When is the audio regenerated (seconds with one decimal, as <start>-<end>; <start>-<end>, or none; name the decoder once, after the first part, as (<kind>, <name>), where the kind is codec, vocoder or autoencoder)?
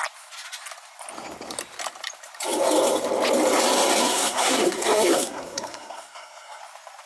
4.0-6.6 (codec, SNAC)